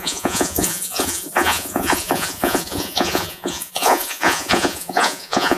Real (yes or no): no